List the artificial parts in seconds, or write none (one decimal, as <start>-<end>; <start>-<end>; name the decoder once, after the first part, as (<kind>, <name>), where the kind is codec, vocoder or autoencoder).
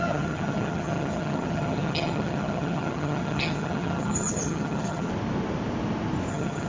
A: 0.0-5.1 (vocoder, HiFi-GAN); 6.3-6.7